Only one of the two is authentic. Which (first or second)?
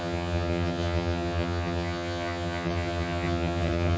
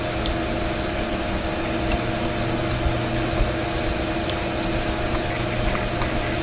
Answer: second